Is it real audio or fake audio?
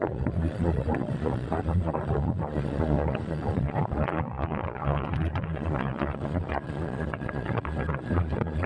fake